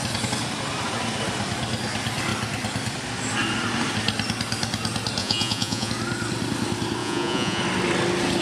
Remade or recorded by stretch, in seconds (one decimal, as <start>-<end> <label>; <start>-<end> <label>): 0.0-5.2 recorded; 5.2-5.9 remade; 5.9-7.0 recorded; 7.0-7.6 remade; 7.6-8.4 recorded